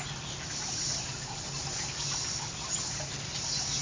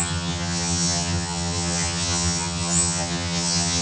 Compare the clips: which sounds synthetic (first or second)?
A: second